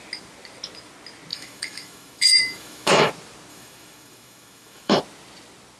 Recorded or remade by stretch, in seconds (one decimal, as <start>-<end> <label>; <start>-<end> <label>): 0.0-1.3 recorded; 1.3-3.1 remade; 3.1-3.5 recorded; 3.5-5.0 remade; 5.0-5.8 recorded